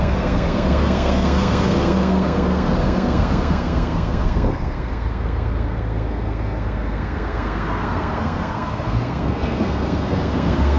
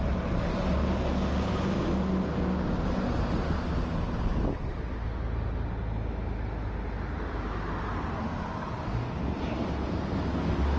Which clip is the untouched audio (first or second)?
second